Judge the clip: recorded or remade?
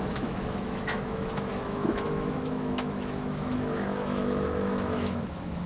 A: remade